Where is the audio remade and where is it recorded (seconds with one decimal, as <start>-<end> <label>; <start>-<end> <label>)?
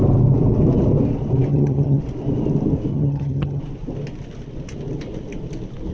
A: 0.0-1.5 recorded; 1.5-2.0 remade; 2.0-2.9 recorded; 2.9-3.6 remade; 3.6-5.9 recorded